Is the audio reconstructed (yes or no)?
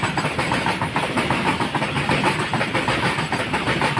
no